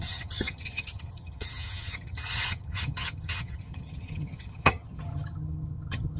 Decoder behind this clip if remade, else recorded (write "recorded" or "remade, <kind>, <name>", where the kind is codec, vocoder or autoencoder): remade, vocoder, HiFi-GAN